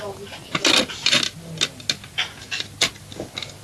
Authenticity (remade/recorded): recorded